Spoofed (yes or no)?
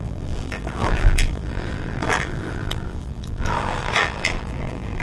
yes